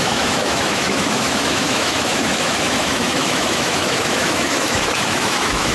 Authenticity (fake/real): fake